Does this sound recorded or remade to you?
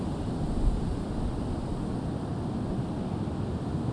recorded